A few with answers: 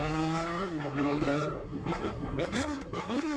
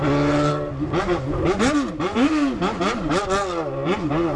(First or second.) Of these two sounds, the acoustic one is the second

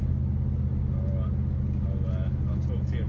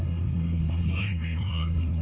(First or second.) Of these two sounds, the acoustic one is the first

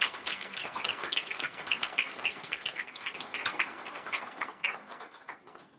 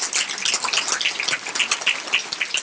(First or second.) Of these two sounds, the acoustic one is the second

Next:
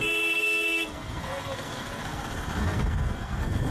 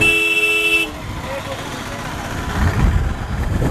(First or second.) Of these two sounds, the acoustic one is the second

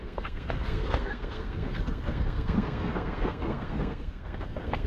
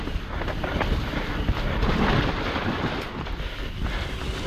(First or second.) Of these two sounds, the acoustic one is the second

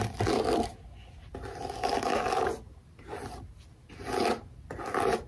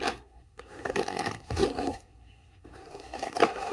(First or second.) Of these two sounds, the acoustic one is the first